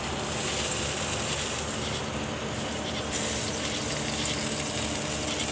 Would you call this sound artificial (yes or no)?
no